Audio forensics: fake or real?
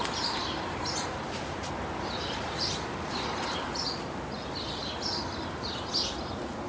real